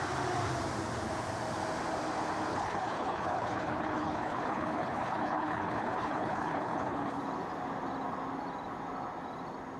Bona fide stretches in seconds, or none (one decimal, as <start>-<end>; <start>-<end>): 0.0-2.5; 7.2-9.8